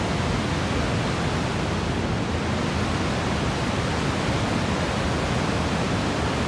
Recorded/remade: recorded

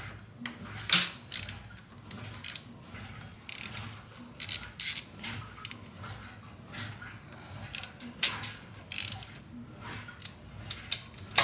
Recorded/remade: recorded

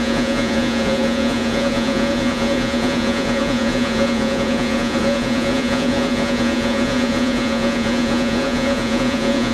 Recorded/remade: remade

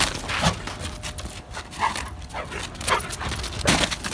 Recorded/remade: recorded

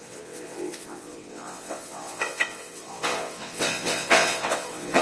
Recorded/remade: remade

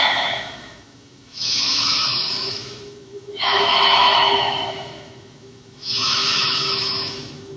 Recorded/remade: remade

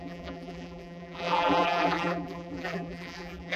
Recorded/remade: remade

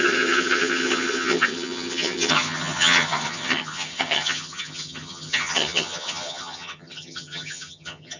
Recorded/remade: remade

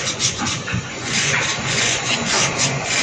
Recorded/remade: remade